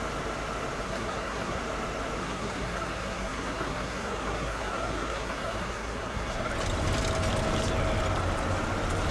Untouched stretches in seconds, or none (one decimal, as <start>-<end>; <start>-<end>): 0.0-0.8; 1.6-2.2; 6.5-9.1